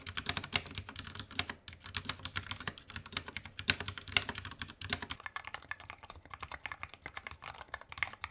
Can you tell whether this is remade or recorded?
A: recorded